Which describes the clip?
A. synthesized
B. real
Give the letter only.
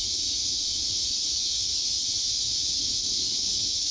A